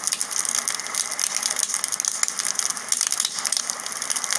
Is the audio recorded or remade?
recorded